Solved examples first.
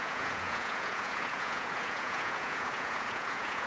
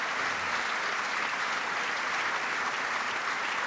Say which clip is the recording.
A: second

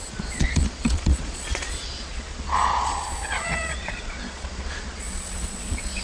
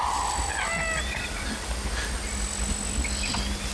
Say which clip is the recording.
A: second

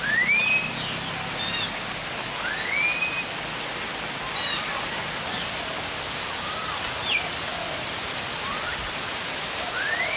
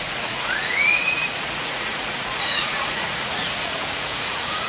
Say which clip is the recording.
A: first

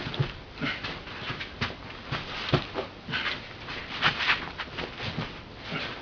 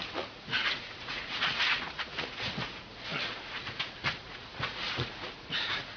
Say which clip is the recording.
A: first